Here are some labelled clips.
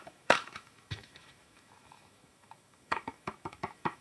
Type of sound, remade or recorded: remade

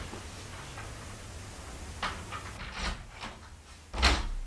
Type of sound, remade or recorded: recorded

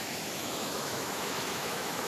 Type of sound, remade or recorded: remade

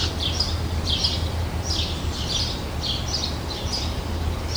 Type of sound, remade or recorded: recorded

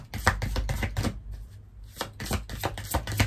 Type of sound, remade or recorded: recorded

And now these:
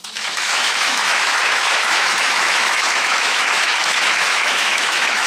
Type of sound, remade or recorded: remade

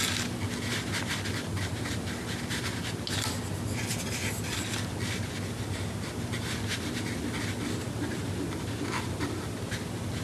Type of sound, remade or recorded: recorded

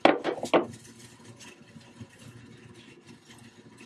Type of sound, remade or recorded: recorded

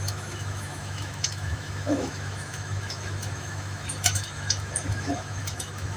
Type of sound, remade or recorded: remade